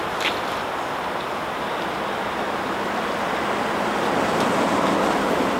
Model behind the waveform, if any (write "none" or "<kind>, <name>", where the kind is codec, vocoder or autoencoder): none